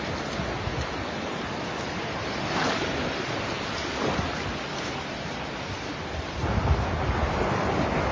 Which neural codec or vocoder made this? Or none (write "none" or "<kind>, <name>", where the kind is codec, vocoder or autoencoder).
none